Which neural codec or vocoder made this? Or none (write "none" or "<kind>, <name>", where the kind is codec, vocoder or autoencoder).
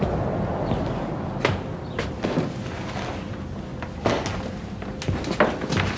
none